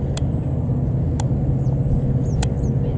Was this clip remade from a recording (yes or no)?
no